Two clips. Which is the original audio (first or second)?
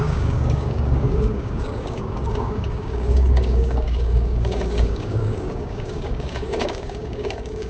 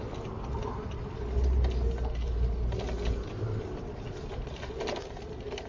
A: second